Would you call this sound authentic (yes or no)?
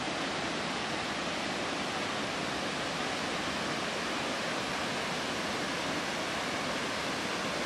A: yes